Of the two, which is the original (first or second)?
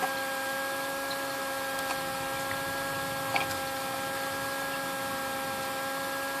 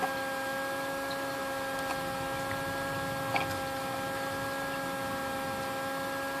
second